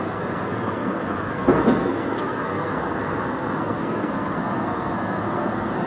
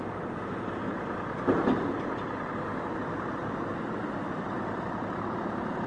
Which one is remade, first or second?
first